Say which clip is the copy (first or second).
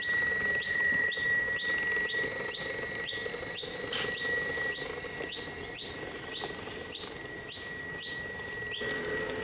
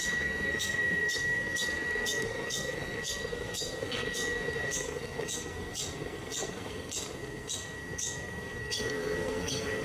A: second